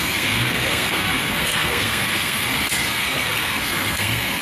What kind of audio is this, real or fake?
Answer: fake